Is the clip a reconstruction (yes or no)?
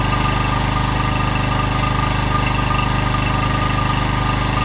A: no